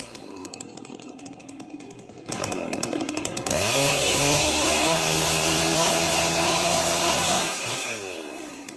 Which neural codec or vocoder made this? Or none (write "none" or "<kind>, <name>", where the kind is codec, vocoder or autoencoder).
codec, SNAC